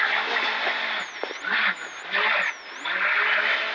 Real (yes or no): yes